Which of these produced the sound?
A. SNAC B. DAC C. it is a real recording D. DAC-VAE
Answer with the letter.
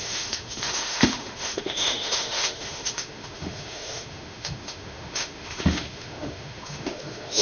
D